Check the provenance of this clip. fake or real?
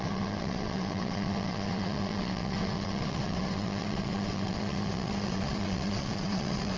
fake